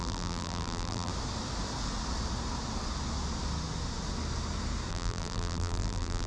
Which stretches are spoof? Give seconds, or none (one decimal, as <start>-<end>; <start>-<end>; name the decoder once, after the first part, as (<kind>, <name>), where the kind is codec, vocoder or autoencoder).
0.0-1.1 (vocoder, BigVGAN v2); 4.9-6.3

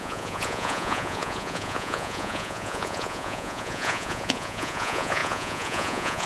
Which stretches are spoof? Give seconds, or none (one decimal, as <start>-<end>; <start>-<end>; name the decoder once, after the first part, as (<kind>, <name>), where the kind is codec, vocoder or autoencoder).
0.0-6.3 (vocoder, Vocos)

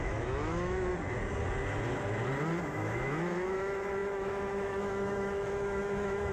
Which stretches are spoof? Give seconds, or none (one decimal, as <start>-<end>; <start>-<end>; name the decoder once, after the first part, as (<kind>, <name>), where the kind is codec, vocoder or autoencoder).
0.0-0.9 (autoencoder, DAC-VAE); 2.6-6.3

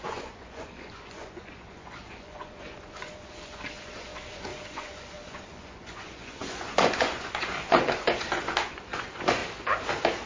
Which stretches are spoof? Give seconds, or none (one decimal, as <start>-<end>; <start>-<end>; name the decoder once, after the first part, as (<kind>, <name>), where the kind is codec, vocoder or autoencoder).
0.0-9.4 (vocoder, Vocos)

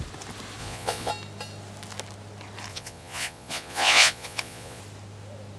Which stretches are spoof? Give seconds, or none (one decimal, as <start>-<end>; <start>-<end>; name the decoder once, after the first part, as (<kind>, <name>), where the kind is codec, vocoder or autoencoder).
0.6-1.1 (vocoder, Vocos); 2.7-4.8

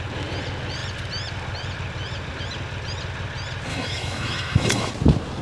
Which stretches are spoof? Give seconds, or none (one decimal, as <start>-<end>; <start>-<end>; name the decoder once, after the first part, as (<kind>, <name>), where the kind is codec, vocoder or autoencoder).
3.7-4.9 (autoencoder, DAC-VAE)

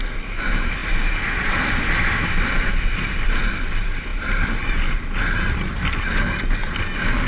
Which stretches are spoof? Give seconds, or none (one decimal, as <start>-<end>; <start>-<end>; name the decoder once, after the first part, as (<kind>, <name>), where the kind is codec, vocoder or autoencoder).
none